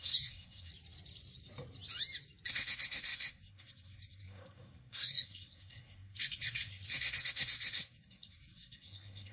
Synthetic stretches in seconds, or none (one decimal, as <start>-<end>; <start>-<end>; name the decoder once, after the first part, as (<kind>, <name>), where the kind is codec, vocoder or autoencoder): 0.0-0.7 (codec, SNAC); 2.5-9.3